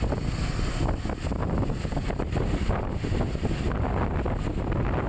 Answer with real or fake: real